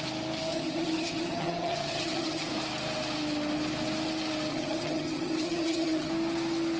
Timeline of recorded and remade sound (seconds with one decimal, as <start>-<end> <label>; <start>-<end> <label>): 0.0-0.5 recorded; 0.5-2.5 remade; 2.5-4.5 recorded; 4.5-6.1 remade; 6.1-6.8 recorded

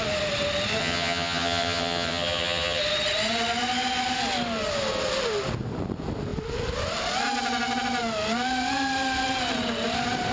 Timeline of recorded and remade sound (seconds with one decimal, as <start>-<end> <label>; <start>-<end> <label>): 0.0-0.8 recorded; 0.8-2.8 remade; 2.8-10.3 recorded

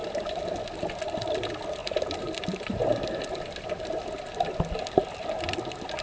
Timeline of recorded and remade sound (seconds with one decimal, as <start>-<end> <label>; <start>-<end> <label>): 0.0-6.0 recorded